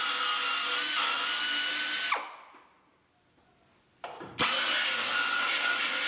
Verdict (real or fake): real